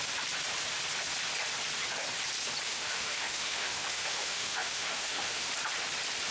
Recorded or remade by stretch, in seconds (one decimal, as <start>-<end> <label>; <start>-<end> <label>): 0.0-2.7 recorded; 2.7-5.5 remade; 5.5-6.3 recorded